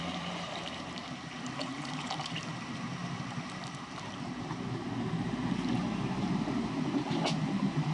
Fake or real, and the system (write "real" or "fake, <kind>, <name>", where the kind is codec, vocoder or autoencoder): fake, vocoder, BigVGAN v2